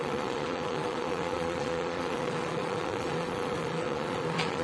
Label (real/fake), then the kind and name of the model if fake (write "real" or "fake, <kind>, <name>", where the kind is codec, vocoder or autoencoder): fake, vocoder, Vocos